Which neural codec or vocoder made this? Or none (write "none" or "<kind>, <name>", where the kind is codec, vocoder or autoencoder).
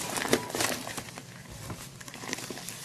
none